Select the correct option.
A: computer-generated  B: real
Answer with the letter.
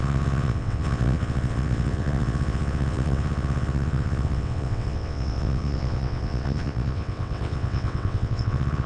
A